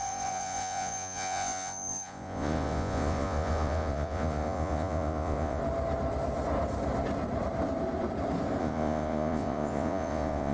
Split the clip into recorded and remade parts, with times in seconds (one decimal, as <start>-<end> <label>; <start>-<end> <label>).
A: 0.0-5.6 remade; 5.6-8.6 recorded; 8.6-10.5 remade